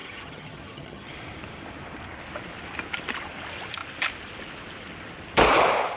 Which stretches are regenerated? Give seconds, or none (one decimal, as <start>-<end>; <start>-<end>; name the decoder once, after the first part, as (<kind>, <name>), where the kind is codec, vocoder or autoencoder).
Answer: 0.0-1.1 (vocoder, HiFi-GAN)

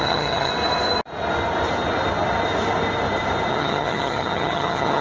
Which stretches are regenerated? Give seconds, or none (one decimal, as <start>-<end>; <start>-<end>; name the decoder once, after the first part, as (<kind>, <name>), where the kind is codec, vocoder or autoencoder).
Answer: 0.0-0.5 (vocoder, HiFi-GAN); 3.5-5.0

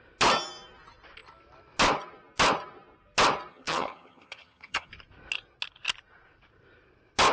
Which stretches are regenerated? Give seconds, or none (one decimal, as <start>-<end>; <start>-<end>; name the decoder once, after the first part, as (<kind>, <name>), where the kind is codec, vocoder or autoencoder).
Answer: 3.5-4.9 (vocoder, HiFi-GAN)